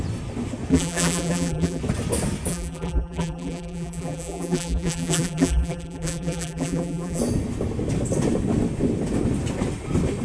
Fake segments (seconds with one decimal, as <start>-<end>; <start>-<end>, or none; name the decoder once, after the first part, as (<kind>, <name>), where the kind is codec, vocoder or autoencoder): 0.7-1.8 (vocoder, BigVGAN v2); 2.5-7.2